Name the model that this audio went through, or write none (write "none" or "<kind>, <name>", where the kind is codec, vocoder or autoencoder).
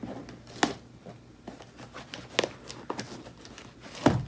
none